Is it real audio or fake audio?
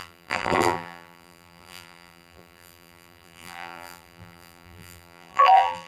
fake